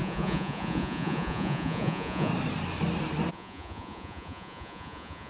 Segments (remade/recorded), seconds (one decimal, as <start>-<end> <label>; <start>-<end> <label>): 0.0-2.3 remade; 2.3-3.3 recorded; 3.3-5.3 remade